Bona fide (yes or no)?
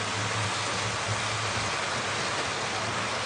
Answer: yes